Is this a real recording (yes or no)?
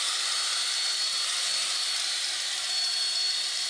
yes